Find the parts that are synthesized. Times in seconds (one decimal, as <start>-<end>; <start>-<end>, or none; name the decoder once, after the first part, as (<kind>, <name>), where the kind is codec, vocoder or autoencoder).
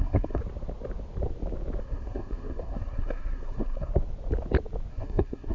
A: 0.0-0.4 (codec, SNAC); 1.8-3.9; 4.9-5.5